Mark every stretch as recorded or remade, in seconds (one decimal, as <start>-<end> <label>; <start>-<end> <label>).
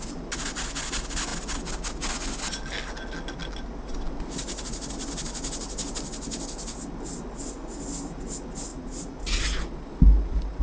0.0-8.7 recorded; 8.7-9.4 remade; 9.4-10.6 recorded